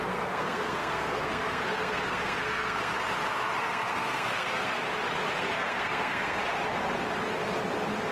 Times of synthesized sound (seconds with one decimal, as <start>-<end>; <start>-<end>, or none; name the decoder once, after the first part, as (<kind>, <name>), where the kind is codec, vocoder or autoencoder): 0.0-2.9 (codec, SNAC); 3.6-4.8; 5.4-6.4